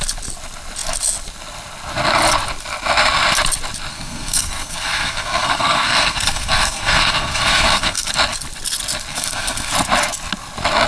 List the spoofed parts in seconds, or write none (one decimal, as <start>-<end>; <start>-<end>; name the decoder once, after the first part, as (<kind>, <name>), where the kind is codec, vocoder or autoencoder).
3.9-8.1 (codec, SNAC); 9.1-9.7

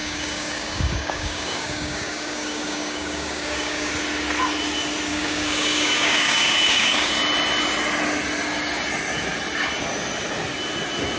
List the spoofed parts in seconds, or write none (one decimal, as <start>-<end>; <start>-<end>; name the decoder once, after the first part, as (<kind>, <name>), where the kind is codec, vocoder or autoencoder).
0.0-3.9 (codec, DAC); 5.1-7.1

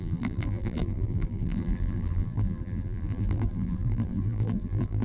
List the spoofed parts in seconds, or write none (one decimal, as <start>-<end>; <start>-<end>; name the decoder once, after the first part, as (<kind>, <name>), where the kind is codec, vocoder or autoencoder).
0.0-5.0 (vocoder, BigVGAN v2)

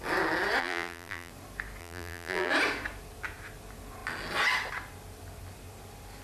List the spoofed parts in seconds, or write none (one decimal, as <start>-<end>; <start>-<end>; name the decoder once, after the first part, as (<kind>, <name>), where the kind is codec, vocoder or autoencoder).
0.6-1.3 (vocoder, BigVGAN v2); 1.8-2.5

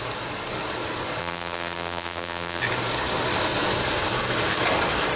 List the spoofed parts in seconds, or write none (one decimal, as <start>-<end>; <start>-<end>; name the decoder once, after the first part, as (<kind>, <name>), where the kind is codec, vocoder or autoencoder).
1.2-2.6 (vocoder, BigVGAN v2)

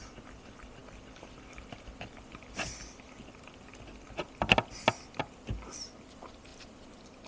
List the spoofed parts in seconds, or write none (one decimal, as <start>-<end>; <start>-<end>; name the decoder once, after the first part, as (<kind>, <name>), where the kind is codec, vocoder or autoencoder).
none

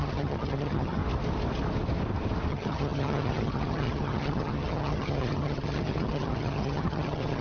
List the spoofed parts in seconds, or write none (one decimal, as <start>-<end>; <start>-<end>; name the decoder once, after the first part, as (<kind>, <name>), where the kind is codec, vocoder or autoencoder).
0.0-1.0 (vocoder, HiFi-GAN); 2.5-7.4

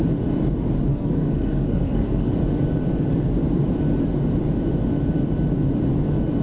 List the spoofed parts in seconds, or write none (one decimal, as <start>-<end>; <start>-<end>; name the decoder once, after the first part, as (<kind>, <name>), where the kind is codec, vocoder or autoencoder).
0.9-2.3 (codec, SNAC)